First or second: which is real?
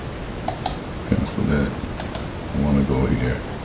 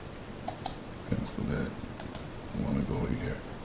first